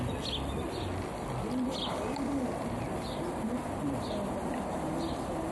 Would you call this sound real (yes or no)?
yes